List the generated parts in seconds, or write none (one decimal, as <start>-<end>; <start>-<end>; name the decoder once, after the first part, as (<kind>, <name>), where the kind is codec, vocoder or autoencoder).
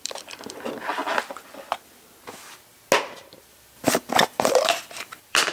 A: 0.0-1.0 (vocoder, BigVGAN v2); 3.1-5.5